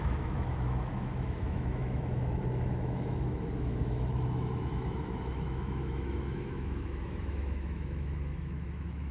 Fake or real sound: fake